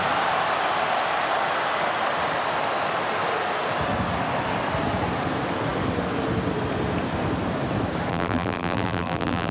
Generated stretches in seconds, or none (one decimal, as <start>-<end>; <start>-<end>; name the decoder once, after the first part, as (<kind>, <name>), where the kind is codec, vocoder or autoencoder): 8.1-9.5 (vocoder, BigVGAN v2)